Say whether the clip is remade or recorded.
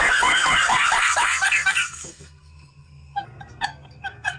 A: remade